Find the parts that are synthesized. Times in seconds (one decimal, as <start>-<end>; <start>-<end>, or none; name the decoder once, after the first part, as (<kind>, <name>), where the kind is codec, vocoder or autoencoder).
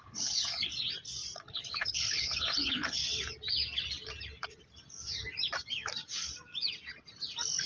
0.0-0.7 (codec, HILCodec); 1.4-3.0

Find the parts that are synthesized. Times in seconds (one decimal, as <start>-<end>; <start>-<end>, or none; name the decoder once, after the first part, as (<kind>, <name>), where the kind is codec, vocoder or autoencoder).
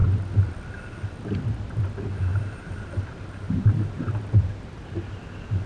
2.3-5.1 (vocoder, BigVGAN v2)